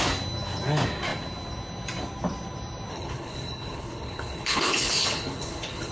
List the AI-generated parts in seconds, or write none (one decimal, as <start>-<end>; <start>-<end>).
2.9-5.9